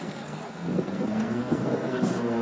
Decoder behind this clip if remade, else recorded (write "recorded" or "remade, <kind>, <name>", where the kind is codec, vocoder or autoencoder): remade, codec, SNAC